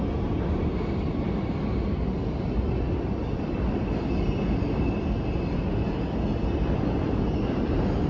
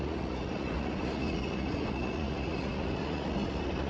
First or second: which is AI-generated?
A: second